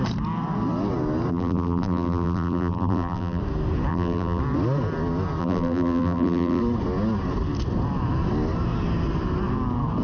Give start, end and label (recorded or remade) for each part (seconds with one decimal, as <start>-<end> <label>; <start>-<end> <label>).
0.0-1.3 recorded; 1.3-3.4 remade; 3.4-3.9 recorded; 3.9-4.4 remade; 4.4-5.4 recorded; 5.4-6.6 remade; 6.6-10.0 recorded